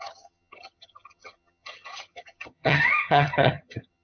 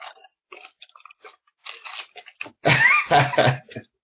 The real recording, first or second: second